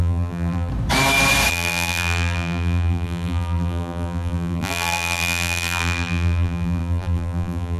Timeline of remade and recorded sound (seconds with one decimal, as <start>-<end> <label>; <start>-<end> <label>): 0.0-0.7 remade; 0.7-1.5 recorded; 1.5-7.8 remade